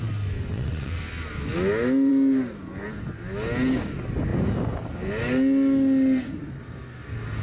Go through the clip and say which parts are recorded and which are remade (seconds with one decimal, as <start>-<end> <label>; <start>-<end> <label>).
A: 0.0-0.5 recorded; 0.5-1.0 remade; 1.0-7.4 recorded